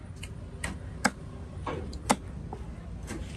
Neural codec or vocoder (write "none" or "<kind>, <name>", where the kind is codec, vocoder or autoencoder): none